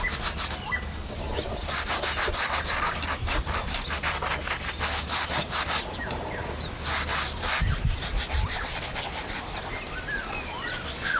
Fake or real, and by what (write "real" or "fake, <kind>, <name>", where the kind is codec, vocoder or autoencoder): real